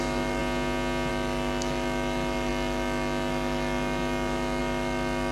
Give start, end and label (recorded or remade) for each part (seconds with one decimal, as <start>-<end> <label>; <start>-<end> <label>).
0.0-0.4 remade; 0.4-1.1 recorded; 1.1-5.3 remade